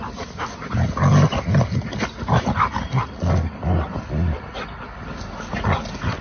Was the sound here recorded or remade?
recorded